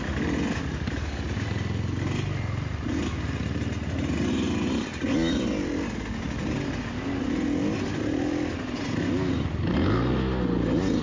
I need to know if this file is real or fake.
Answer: real